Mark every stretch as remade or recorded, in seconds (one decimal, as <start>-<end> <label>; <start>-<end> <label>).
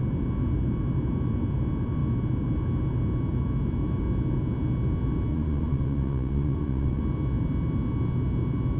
0.0-5.3 recorded; 5.3-7.0 remade; 7.0-8.8 recorded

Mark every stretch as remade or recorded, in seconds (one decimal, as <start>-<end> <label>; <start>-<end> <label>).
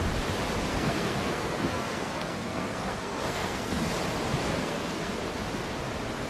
0.0-0.7 recorded; 0.7-3.9 remade; 3.9-4.4 recorded; 4.4-5.2 remade; 5.2-6.3 recorded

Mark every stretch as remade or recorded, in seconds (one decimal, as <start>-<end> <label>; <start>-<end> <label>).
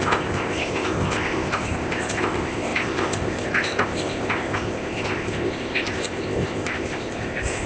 0.0-7.7 remade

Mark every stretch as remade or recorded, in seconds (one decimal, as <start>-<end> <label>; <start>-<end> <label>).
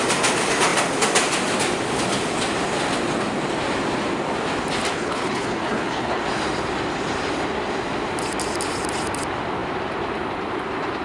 0.0-4.9 recorded; 4.9-6.2 remade; 6.2-11.0 recorded